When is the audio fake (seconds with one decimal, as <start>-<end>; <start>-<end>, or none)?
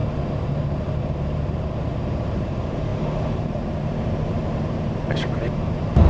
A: 0.6-6.1